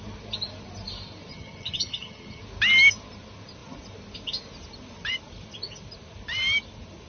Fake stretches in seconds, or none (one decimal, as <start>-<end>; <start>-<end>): 1.3-2.4